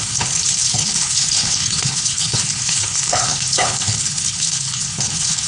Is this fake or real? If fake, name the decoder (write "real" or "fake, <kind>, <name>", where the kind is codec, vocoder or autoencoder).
fake, codec, HILCodec